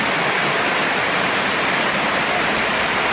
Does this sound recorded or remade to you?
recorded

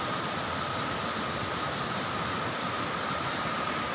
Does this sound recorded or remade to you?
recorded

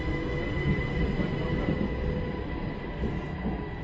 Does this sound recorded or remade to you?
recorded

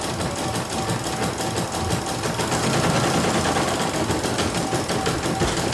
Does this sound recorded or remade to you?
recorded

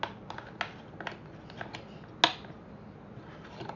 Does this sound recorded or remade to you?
recorded